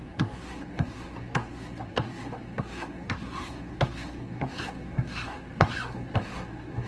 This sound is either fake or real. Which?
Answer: fake